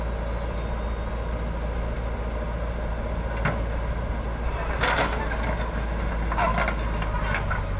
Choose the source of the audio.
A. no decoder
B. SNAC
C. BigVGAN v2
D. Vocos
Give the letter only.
A